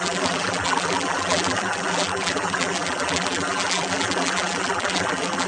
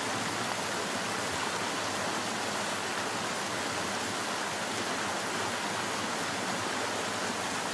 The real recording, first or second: second